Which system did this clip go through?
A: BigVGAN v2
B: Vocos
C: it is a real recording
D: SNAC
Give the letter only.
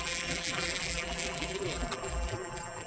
A